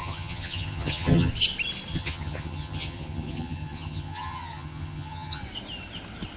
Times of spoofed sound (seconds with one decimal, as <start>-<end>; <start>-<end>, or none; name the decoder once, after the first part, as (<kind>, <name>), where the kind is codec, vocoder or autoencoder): 0.0-1.3 (vocoder, HiFi-GAN); 1.9-5.4